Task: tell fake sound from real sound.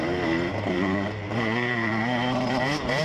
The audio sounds fake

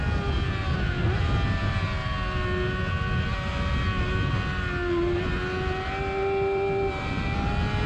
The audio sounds real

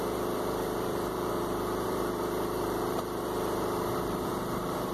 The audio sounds fake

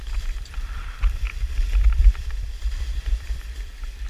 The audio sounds fake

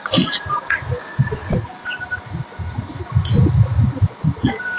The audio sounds fake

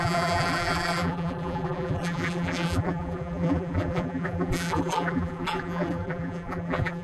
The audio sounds fake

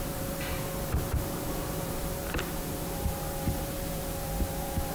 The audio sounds fake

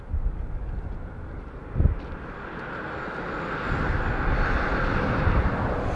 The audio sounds real